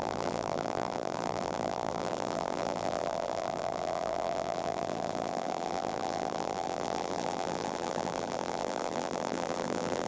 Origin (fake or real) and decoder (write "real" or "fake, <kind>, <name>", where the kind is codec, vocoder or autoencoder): fake, vocoder, BigVGAN v2